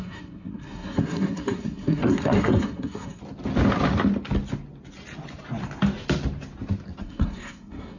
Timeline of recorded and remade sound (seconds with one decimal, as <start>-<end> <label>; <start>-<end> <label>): 0.0-3.2 remade; 3.2-7.0 recorded; 7.0-8.0 remade